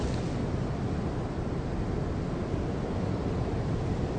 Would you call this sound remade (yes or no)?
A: no